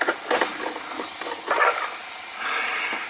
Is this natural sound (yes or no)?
yes